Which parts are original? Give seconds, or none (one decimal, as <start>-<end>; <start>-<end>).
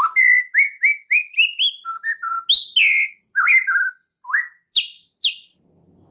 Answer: 0.0-6.1